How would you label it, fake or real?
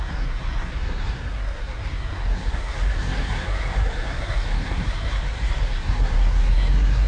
fake